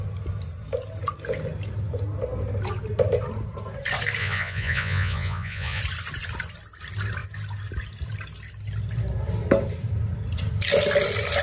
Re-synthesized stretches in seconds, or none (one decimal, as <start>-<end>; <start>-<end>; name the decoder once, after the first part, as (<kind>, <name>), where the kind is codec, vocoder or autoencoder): 4.2-5.8 (vocoder, Vocos)